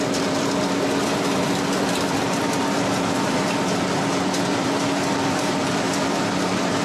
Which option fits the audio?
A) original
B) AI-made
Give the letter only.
B